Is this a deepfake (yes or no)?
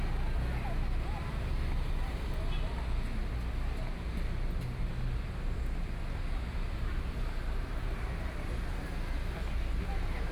no